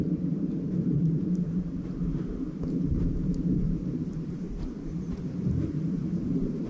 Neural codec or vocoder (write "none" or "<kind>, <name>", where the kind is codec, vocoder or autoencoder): vocoder, BigVGAN v2